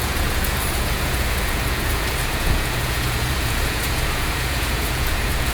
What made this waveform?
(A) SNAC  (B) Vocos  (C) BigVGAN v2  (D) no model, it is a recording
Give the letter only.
B